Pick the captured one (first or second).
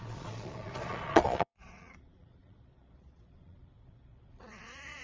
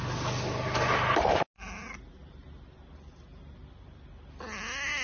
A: second